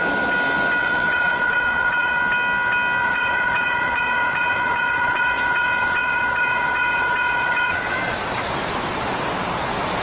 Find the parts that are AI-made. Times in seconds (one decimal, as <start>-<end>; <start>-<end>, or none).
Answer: 0.8-2.2; 3.0-8.2